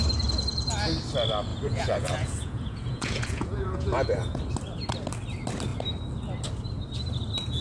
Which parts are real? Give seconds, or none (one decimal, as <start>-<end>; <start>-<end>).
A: 0.0-1.5; 4.4-7.6